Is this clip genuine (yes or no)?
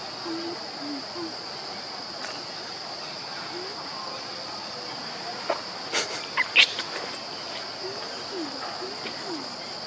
yes